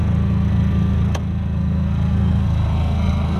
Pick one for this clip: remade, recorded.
remade